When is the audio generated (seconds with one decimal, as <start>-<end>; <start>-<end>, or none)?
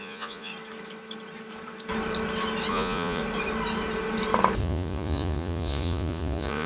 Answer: 0.0-0.5; 2.7-3.2; 4.6-6.7